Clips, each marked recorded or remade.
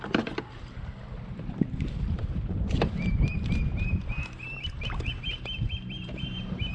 remade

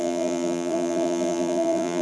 remade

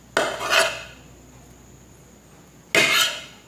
recorded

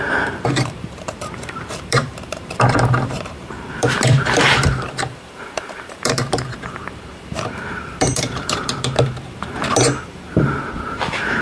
remade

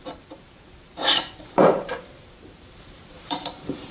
remade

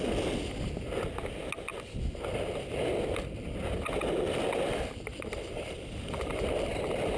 recorded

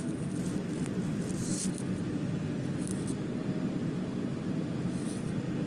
recorded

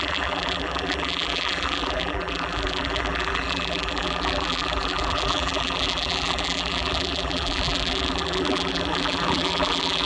remade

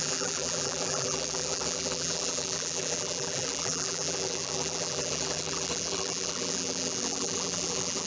remade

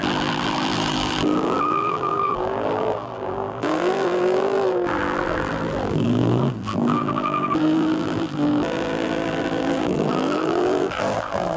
remade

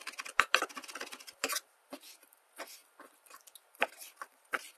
remade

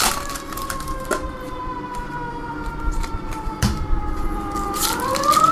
remade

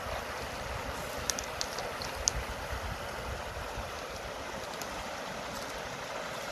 recorded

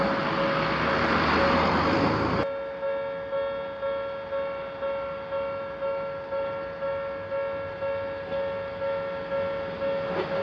recorded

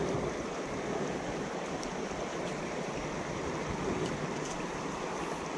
remade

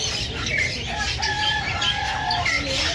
recorded